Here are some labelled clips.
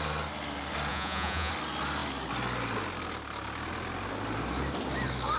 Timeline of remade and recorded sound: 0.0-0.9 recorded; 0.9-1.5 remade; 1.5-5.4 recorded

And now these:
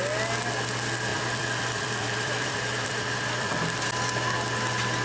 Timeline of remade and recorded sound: 0.0-1.1 recorded; 1.1-3.5 remade; 3.5-5.0 recorded

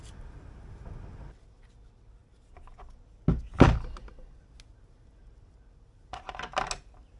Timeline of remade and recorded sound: 0.0-7.2 recorded

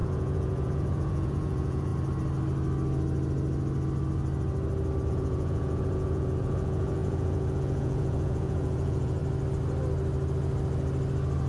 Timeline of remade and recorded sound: 0.0-1.9 remade; 1.9-5.1 recorded; 5.1-9.2 remade; 9.2-11.5 recorded

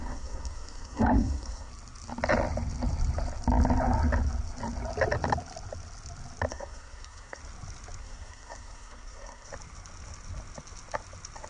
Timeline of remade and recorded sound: 0.0-1.7 remade; 1.7-6.5 recorded; 6.5-7.4 remade; 7.4-8.0 recorded; 8.0-9.5 remade; 9.5-11.5 recorded

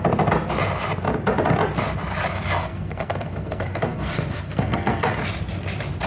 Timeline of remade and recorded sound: 0.0-2.6 recorded; 2.6-5.1 remade; 5.1-6.1 recorded

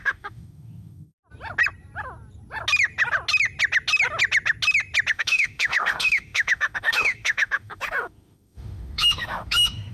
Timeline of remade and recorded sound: 0.0-1.2 remade; 1.2-5.1 recorded; 5.1-9.9 remade

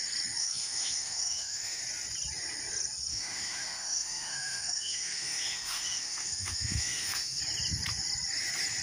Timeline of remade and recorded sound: 0.0-0.4 recorded; 0.4-1.8 remade; 1.8-3.1 recorded; 3.1-7.4 remade; 7.4-8.8 recorded